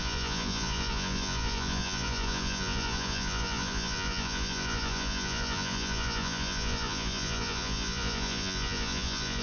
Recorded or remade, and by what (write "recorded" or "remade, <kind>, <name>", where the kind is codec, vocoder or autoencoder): remade, vocoder, Vocos